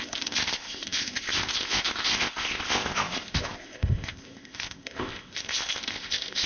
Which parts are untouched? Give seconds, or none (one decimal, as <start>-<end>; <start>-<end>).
none

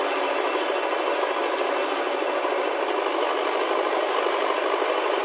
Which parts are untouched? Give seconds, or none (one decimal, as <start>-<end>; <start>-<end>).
0.0-5.2